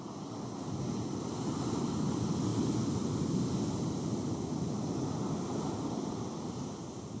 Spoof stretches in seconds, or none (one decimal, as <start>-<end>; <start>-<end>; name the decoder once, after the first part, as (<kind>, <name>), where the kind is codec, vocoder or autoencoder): none

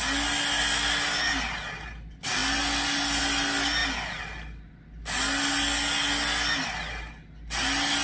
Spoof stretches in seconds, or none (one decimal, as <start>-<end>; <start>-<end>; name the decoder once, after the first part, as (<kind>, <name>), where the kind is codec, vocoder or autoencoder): none

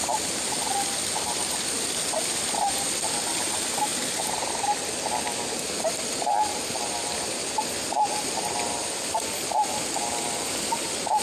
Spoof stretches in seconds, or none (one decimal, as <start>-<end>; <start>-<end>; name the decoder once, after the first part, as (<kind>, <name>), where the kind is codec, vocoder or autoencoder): none

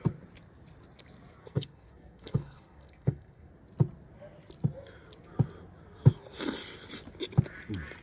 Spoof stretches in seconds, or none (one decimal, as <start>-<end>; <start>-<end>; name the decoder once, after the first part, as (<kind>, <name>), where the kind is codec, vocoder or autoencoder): 1.4-3.5 (codec, SNAC)

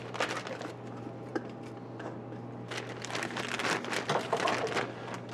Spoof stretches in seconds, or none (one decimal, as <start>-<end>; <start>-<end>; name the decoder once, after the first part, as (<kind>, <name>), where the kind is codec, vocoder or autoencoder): none